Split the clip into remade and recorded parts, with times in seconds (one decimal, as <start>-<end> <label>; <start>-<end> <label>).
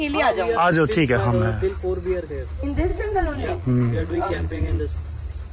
0.0-2.9 recorded; 2.9-4.8 remade; 4.8-5.5 recorded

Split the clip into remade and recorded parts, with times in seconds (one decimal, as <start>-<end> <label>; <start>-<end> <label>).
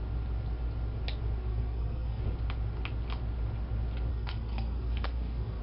0.0-1.5 recorded; 1.5-2.2 remade; 2.2-4.1 recorded; 4.1-5.6 remade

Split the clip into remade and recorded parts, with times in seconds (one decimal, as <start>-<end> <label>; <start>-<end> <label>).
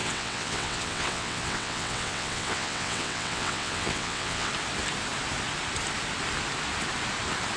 0.0-4.5 remade; 4.5-7.6 recorded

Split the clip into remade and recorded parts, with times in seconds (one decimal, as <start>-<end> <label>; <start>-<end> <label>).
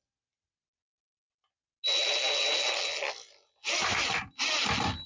0.0-5.1 recorded